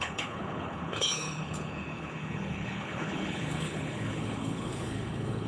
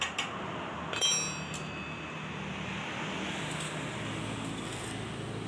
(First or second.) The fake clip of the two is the first